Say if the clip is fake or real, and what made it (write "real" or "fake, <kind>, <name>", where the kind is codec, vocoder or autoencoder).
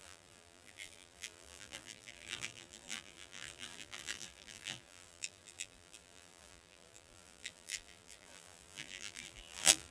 fake, vocoder, BigVGAN v2